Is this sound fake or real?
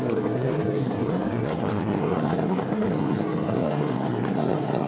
fake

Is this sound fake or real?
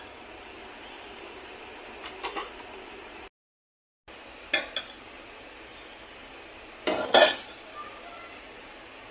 real